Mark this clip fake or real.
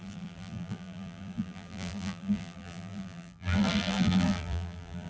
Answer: fake